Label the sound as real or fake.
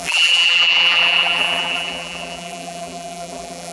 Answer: fake